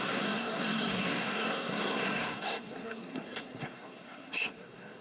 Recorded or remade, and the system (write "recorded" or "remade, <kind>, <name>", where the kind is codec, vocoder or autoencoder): remade, codec, SNAC